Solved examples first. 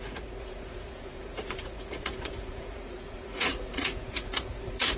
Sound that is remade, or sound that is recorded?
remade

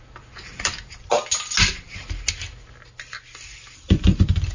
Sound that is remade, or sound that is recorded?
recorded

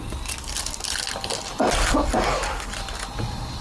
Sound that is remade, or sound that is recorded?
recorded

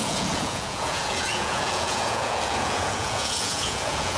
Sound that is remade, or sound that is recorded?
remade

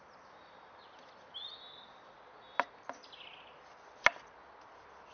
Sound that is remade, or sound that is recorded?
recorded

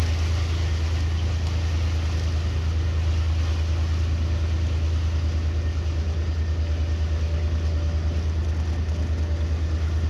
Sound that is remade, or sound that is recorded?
recorded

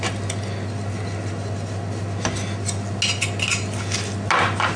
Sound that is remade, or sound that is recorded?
recorded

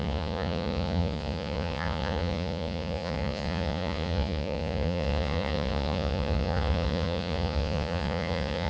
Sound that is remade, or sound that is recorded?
remade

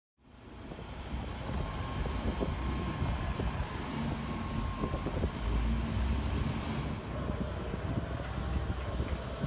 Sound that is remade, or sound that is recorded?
recorded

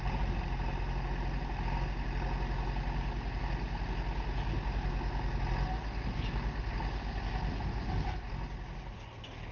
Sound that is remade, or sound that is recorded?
recorded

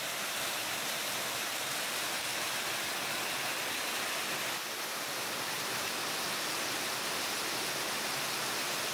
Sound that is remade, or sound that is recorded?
recorded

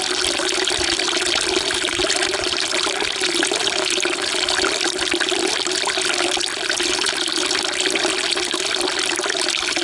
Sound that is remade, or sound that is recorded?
recorded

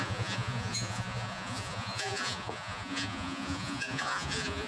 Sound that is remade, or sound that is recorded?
remade